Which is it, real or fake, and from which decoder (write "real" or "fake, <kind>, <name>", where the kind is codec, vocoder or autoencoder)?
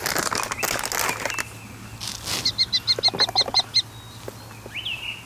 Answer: real